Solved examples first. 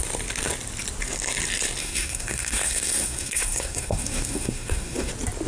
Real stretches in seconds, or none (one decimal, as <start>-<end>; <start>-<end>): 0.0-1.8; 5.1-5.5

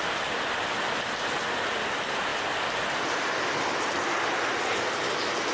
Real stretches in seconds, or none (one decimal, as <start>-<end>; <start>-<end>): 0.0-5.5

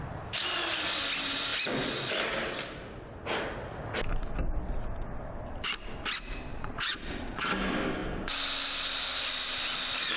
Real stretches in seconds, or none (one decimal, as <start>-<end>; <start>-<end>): 0.0-6.5; 7.5-10.2

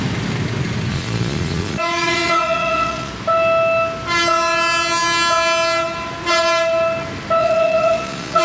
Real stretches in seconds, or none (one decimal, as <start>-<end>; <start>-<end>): 0.0-0.9; 3.1-7.4